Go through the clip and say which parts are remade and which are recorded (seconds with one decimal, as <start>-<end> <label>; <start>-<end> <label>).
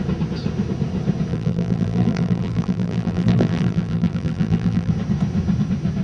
0.0-1.3 recorded; 1.3-4.9 remade; 4.9-6.0 recorded